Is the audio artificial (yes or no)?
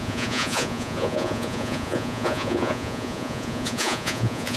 yes